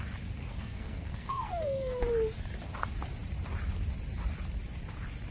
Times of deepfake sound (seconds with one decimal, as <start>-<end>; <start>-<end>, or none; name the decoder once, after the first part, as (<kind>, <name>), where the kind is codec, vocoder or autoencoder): 0.4-2.0 (codec, SNAC)